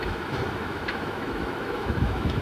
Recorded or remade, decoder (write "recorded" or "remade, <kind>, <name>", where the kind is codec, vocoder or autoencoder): remade, autoencoder, DAC-VAE